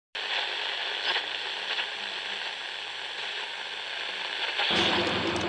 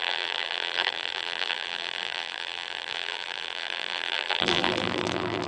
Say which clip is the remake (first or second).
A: second